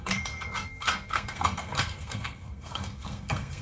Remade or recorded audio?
remade